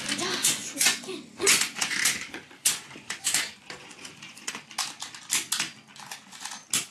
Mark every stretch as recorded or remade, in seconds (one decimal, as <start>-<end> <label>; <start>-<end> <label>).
0.0-0.4 recorded; 0.4-4.5 remade; 4.5-6.9 recorded